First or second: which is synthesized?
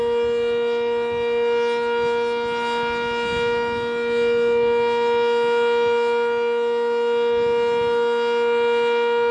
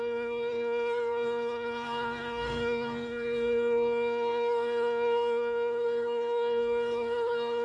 second